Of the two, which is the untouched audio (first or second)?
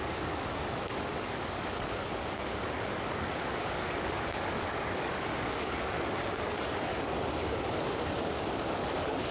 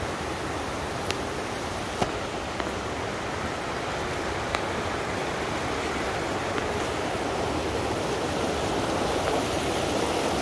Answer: second